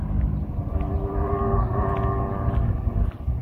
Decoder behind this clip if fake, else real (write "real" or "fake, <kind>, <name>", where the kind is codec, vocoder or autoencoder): real